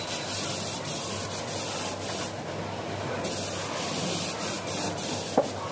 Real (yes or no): yes